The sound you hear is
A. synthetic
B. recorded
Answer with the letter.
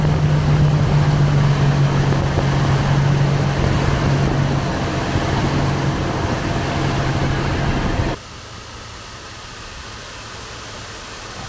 B